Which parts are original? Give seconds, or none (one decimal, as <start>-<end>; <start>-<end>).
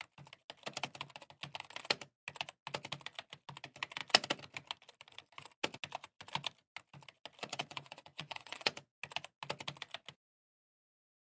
0.0-7.4; 8.7-11.4